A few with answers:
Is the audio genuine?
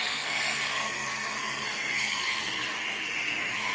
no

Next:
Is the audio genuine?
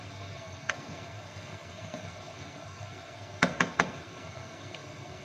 no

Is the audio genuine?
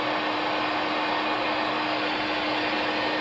yes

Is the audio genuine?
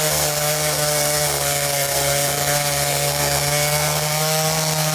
no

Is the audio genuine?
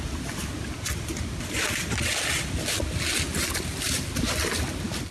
yes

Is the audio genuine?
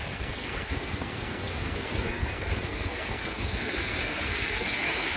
no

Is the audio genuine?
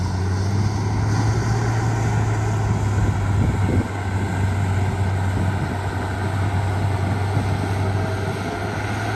yes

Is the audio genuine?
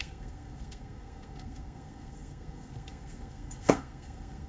no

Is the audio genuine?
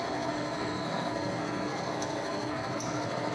no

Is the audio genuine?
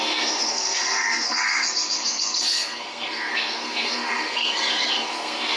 no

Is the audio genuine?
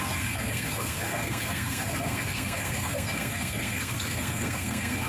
no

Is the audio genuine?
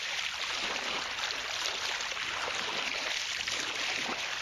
yes